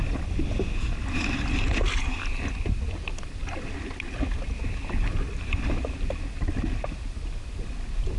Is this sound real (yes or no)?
yes